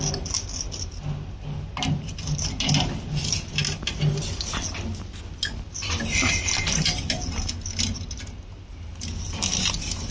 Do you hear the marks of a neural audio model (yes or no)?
no